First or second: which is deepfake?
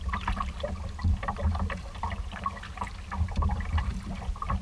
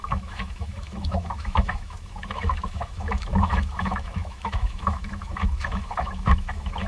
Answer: second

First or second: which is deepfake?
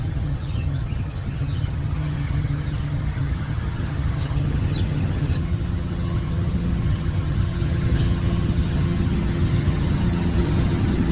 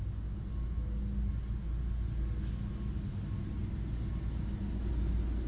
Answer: first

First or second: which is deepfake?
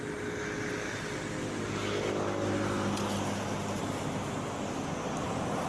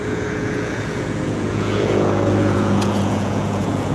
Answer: second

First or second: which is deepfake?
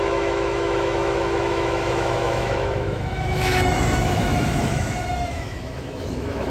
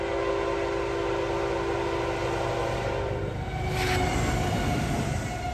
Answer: first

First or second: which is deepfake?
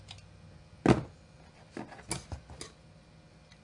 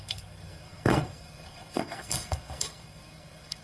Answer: second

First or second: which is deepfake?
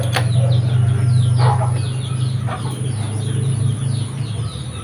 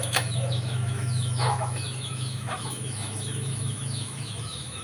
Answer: second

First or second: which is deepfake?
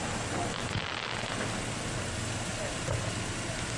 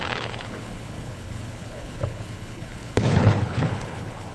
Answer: second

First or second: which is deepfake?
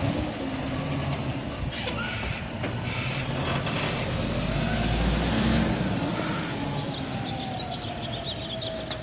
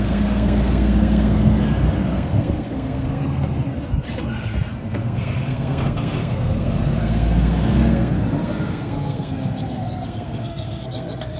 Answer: second